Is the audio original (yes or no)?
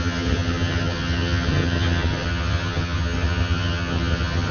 no